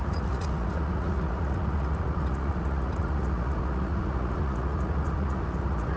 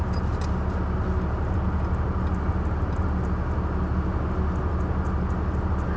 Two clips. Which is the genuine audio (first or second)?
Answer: second